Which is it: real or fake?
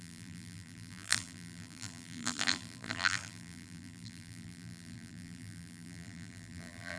fake